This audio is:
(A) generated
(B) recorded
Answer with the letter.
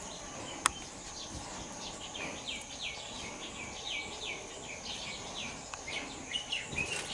B